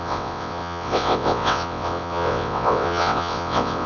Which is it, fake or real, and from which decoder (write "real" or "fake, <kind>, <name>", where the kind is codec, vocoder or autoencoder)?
fake, vocoder, WaveNeXt